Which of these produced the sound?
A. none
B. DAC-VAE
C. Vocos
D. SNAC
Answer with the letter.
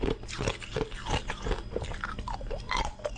A